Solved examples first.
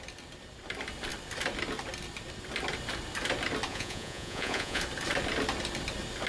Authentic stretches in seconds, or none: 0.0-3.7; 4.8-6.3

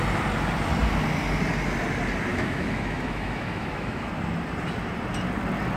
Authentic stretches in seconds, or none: 0.0-2.3; 4.1-5.8